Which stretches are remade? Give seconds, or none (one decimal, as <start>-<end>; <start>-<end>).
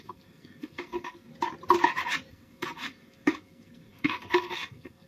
0.0-1.3; 2.3-5.1